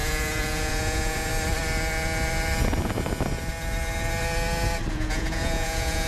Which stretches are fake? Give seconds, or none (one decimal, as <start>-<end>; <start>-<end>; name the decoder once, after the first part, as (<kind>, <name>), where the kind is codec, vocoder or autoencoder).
0.0-1.3 (vocoder, Vocos); 4.9-6.1